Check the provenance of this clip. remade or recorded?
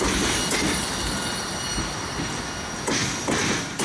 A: recorded